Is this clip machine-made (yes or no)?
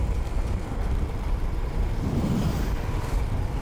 yes